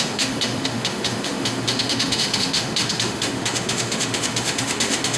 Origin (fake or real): fake